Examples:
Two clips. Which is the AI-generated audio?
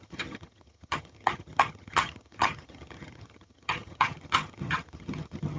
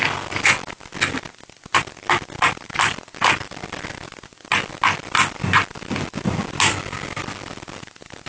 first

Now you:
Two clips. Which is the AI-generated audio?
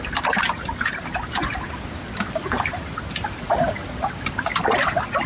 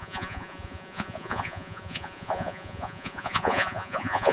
second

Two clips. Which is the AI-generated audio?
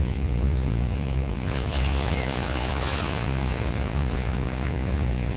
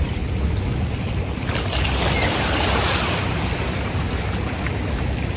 first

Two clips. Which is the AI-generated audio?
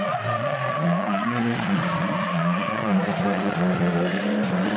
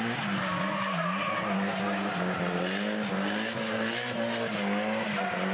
first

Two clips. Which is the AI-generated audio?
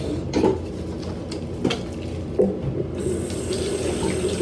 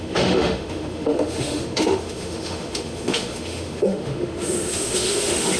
second